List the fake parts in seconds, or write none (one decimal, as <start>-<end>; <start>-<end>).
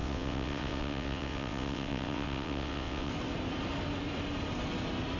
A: 0.0-3.1